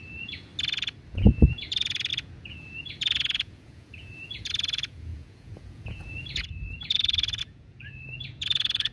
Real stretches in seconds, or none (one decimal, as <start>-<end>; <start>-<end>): 0.5-1.1